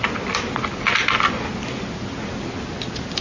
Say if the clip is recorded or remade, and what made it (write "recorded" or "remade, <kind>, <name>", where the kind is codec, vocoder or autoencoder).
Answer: recorded